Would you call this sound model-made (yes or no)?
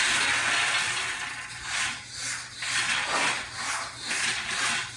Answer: no